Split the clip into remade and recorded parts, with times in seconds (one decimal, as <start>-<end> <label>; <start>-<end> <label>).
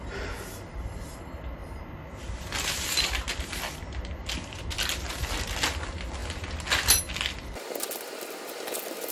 0.0-9.1 recorded